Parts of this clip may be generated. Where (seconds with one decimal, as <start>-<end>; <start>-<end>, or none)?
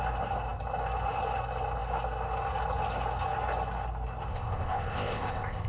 4.3-5.7